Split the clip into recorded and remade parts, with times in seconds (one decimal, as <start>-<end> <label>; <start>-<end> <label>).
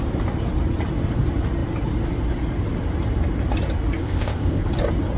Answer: 0.0-4.0 recorded; 4.0-4.6 remade; 4.6-5.2 recorded